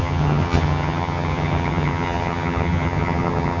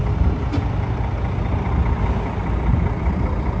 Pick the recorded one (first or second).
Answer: second